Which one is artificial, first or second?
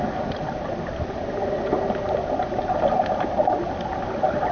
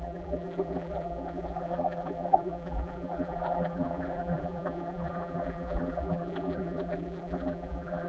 second